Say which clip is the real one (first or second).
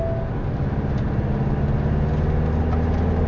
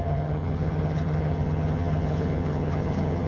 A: first